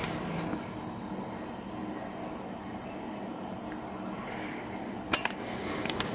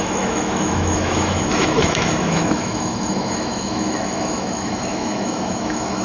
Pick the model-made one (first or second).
second